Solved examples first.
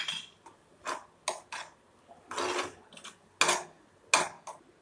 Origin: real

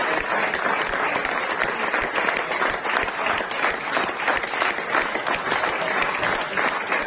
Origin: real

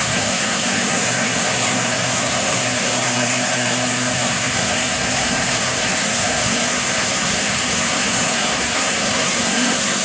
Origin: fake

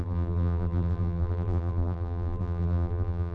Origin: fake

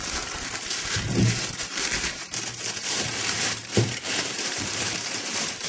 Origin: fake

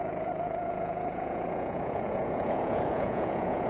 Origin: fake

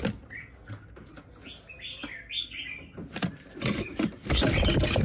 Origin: real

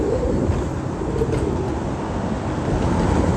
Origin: real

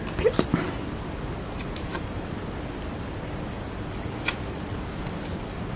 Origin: real